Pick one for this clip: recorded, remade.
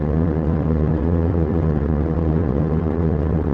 remade